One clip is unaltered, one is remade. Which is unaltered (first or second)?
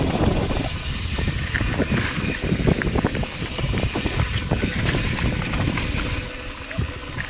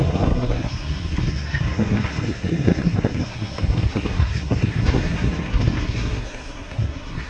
first